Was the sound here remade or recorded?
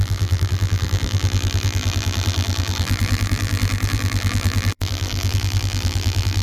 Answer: remade